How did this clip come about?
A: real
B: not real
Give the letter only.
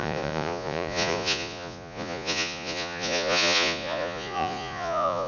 B